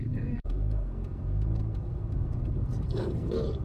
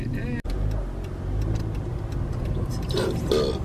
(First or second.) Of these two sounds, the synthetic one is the first